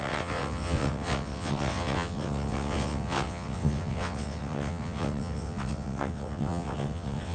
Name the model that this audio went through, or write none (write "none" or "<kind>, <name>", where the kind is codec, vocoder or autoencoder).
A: vocoder, WaveNeXt